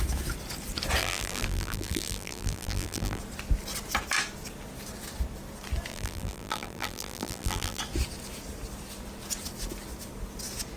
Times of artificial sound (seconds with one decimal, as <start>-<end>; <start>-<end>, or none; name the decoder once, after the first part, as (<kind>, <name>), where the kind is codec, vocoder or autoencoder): 1.0-3.2 (vocoder, BigVGAN v2); 5.9-7.8